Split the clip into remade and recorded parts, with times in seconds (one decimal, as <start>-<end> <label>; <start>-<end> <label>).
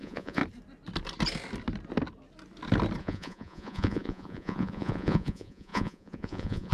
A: 0.0-0.4 remade; 0.4-3.0 recorded; 3.0-6.7 remade